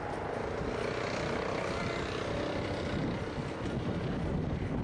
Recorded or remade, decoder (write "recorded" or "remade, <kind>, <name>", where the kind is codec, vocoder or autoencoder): recorded